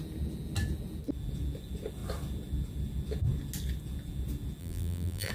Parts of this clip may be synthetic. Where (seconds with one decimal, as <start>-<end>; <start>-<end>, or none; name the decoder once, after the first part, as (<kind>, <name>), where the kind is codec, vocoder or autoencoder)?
4.6-5.3 (vocoder, BigVGAN v2)